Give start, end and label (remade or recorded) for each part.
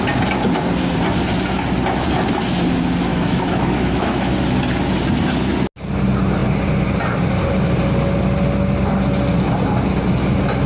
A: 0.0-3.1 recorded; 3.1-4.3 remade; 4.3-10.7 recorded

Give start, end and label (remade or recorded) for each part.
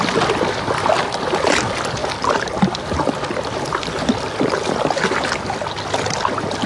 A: 0.0-6.7 recorded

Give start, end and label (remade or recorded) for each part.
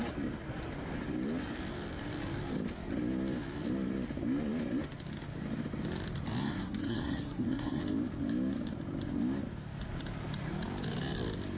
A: 0.0-6.4 recorded; 6.4-7.8 remade; 7.8-11.6 recorded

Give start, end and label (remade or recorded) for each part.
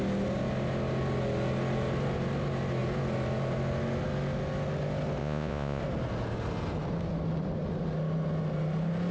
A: 0.0-5.2 recorded; 5.2-5.8 remade; 5.8-9.1 recorded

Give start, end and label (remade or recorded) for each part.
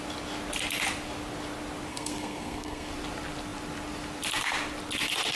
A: 0.0-1.9 recorded; 1.9-2.9 remade; 2.9-5.4 recorded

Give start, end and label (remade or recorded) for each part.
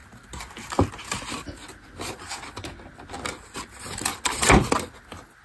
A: 0.0-5.4 recorded